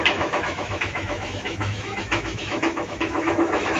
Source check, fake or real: fake